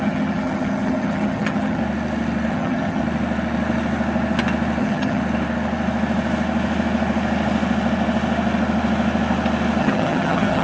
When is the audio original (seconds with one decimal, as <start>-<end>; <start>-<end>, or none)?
1.8-2.5; 3.0-4.8; 5.2-9.8